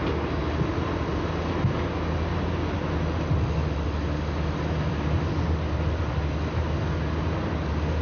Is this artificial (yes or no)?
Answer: no